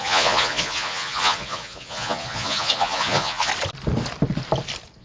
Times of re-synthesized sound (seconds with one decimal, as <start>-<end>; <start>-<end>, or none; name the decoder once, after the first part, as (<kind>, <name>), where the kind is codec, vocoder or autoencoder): 0.0-3.5 (vocoder, Vocos)